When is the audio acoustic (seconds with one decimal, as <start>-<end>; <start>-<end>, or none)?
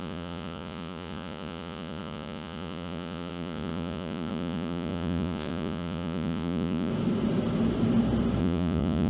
6.9-8.4